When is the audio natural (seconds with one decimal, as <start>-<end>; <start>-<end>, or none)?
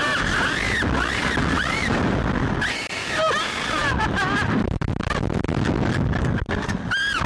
0.0-7.3